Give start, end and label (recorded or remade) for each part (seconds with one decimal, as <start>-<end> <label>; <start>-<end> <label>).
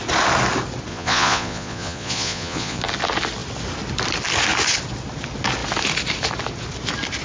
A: 0.0-0.9 recorded; 0.9-2.8 remade; 2.8-7.2 recorded